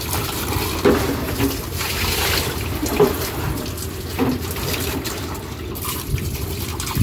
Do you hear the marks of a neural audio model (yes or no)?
no